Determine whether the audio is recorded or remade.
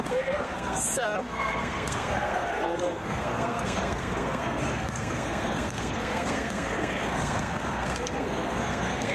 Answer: remade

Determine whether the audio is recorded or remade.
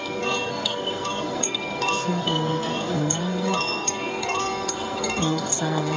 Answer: remade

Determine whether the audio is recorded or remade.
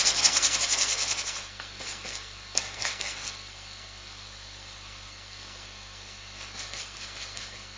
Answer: remade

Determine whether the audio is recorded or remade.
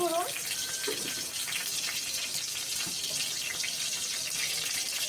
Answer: recorded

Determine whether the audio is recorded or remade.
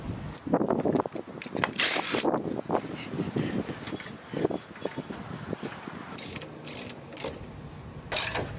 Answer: recorded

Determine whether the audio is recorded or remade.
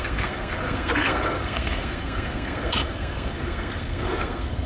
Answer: remade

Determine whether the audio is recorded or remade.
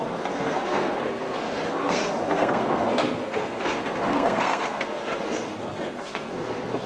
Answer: remade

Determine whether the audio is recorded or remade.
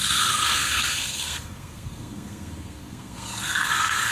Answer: remade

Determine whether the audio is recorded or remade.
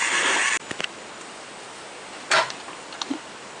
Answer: recorded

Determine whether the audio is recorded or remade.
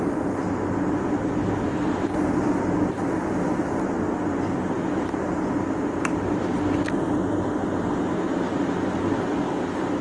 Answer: recorded